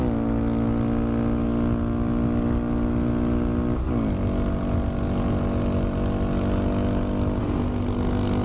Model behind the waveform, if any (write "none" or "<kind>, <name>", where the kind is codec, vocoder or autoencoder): none